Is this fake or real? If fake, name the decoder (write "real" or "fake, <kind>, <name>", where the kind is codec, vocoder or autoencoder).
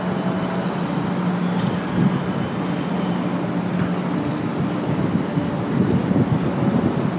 real